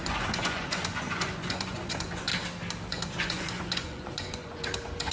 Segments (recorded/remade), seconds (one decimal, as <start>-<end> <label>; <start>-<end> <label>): 0.0-2.3 remade; 2.3-2.9 recorded; 2.9-5.1 remade